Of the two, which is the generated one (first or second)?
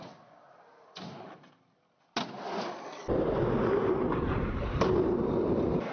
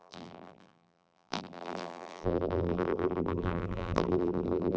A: second